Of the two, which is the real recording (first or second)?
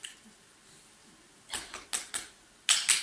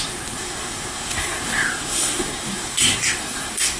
first